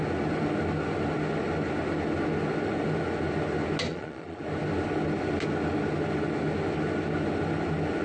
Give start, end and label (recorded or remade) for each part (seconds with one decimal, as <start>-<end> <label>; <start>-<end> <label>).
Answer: 0.0-3.9 recorded; 3.9-4.4 remade; 4.4-8.0 recorded